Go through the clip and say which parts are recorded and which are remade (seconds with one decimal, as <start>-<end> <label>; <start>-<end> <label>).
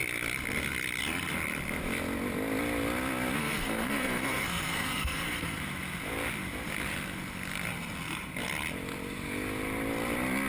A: 0.0-3.4 recorded; 3.4-5.6 remade; 5.6-10.5 recorded